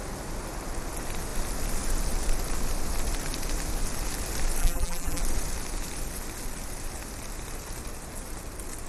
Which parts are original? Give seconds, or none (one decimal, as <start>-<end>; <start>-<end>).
0.0-4.6; 5.2-8.9